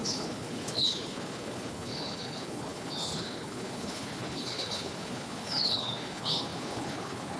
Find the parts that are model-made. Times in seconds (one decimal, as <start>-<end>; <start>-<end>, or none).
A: 0.0-7.4